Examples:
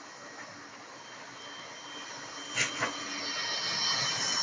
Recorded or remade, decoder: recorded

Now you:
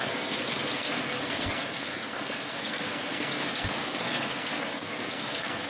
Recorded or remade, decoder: remade, codec, SNAC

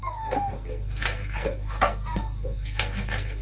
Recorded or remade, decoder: remade, codec, SNAC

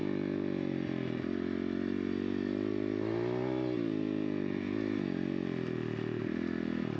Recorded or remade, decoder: recorded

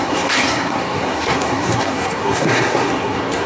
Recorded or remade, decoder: remade, codec, SNAC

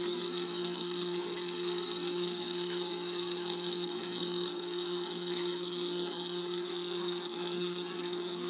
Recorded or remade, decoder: remade, codec, SNAC